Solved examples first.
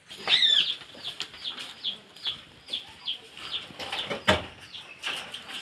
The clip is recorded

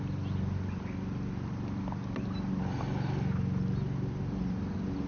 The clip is recorded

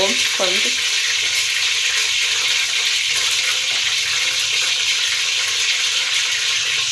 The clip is recorded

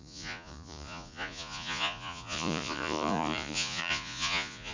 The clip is remade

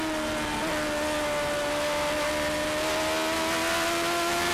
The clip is recorded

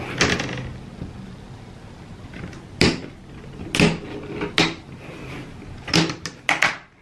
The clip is recorded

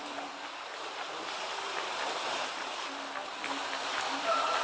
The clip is recorded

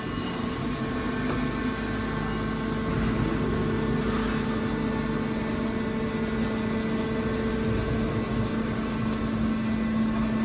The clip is recorded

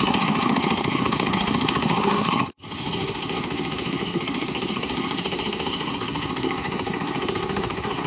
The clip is remade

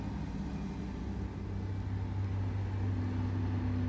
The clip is recorded